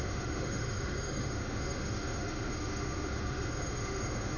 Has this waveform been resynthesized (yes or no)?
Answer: yes